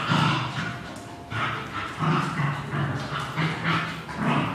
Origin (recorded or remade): recorded